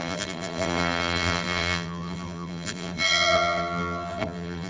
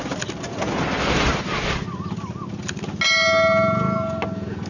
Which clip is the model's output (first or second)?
first